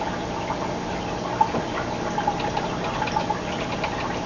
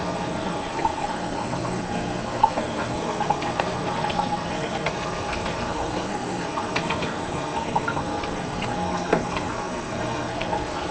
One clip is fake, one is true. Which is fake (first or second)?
second